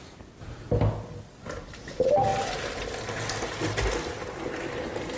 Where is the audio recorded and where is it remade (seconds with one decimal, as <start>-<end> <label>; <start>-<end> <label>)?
0.0-5.2 recorded